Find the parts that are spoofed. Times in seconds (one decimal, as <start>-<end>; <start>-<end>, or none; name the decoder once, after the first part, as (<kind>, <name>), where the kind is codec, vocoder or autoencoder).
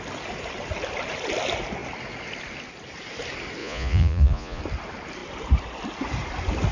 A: 3.6-4.6 (vocoder, Vocos)